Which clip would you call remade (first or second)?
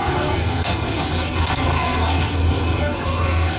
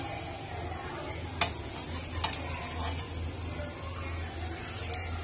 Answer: first